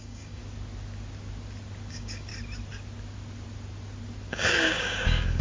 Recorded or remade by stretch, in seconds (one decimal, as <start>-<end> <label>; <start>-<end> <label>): 0.0-0.4 remade; 0.4-1.9 recorded; 1.9-2.3 remade; 2.3-4.3 recorded; 4.3-5.4 remade